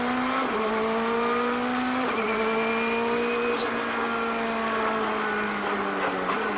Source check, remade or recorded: recorded